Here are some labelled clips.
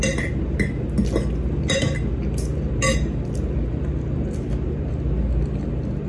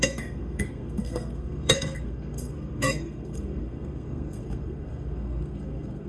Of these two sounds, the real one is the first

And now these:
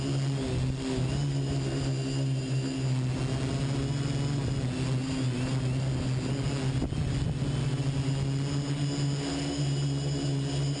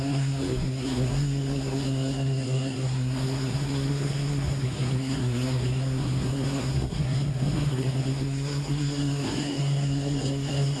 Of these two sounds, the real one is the first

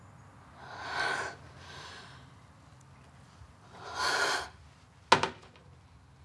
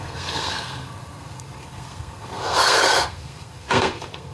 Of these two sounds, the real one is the first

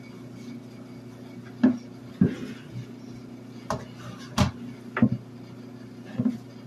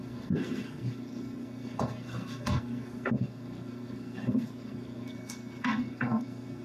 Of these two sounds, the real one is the first